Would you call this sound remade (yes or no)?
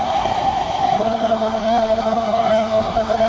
yes